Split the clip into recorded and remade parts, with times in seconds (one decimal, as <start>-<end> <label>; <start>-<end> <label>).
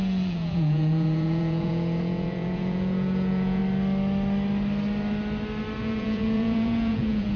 0.0-3.6 remade; 3.6-5.8 recorded; 5.8-7.4 remade